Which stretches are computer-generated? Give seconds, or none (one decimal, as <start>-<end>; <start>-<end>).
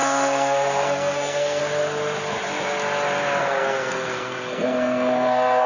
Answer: 0.0-1.6; 3.4-5.7